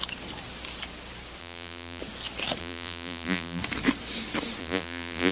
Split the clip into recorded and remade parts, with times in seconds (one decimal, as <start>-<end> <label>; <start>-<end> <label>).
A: 0.0-1.4 recorded; 1.4-2.0 remade; 2.0-2.6 recorded; 2.6-3.6 remade; 3.6-4.6 recorded; 4.6-5.3 remade